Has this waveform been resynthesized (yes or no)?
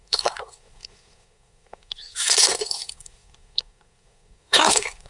yes